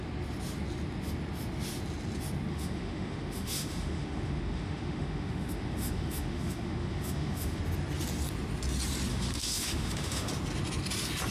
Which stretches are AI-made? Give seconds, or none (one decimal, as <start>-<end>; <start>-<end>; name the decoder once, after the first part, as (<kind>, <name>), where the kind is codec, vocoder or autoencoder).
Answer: 2.5-7.6 (autoencoder, DAC-VAE); 9.1-10.3